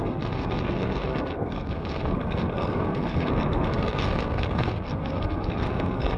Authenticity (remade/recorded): remade